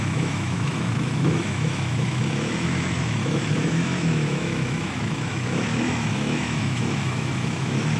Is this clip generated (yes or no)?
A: yes